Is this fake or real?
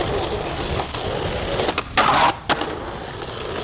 real